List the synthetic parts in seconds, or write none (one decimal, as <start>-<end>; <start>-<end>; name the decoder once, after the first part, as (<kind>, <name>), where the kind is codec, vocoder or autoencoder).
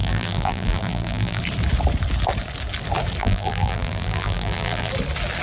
0.0-1.4 (vocoder, BigVGAN v2); 3.2-4.9